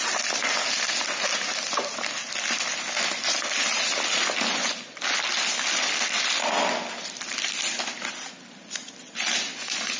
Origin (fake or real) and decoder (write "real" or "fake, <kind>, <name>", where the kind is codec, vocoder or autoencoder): real